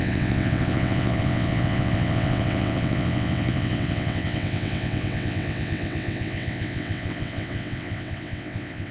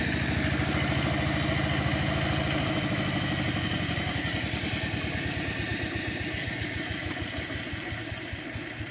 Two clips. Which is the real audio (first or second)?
second